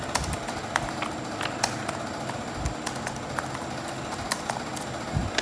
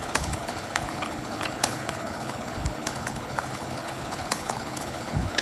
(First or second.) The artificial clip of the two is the second